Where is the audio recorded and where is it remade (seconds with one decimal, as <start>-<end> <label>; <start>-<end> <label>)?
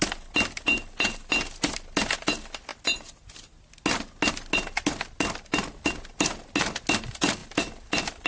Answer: 0.0-8.3 recorded